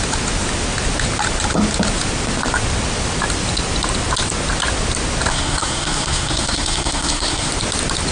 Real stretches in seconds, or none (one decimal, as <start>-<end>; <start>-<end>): 0.0-5.3; 7.5-8.1